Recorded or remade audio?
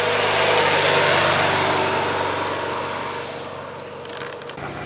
recorded